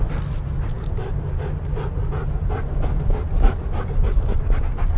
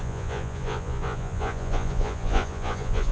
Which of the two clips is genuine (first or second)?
first